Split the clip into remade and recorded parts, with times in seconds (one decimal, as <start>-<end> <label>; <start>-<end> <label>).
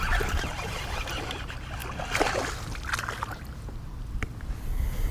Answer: 0.0-5.1 recorded